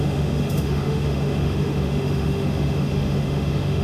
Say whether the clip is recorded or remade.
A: remade